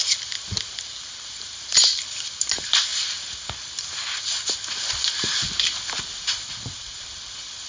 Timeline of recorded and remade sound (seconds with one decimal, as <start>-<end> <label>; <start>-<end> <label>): 0.0-7.7 recorded